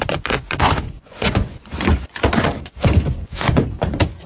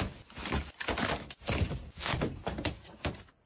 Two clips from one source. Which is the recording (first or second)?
second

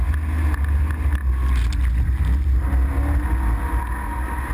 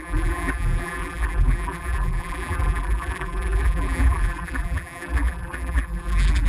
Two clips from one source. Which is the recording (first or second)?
first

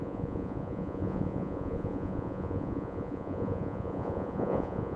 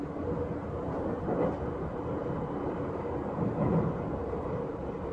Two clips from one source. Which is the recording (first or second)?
second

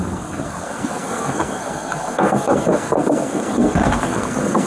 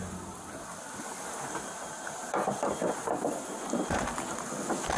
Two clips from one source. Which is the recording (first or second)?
second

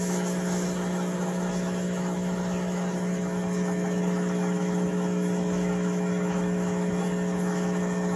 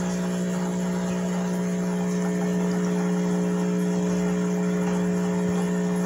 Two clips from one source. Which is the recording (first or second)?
second